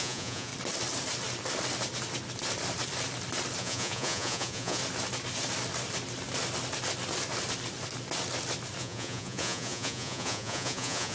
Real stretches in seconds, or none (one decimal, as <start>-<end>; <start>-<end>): 0.5-3.6; 4.8-8.8